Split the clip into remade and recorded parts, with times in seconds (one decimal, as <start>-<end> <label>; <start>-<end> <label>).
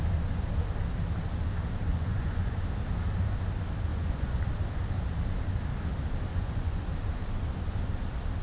0.0-1.9 recorded; 1.9-2.6 remade; 2.6-3.9 recorded; 3.9-4.4 remade; 4.4-6.3 recorded; 6.3-6.8 remade; 6.8-8.4 recorded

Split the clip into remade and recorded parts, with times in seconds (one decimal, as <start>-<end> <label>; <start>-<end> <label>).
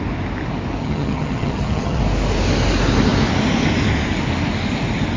0.0-0.8 recorded; 0.8-2.0 remade; 2.0-5.2 recorded